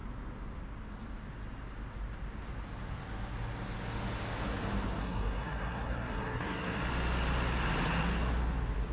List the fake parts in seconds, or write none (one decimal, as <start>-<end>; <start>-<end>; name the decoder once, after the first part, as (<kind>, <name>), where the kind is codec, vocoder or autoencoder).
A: 5.0-6.8 (codec, SNAC)